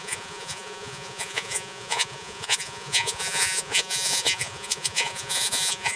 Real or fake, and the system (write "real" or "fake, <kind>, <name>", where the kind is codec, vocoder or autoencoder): fake, vocoder, Vocos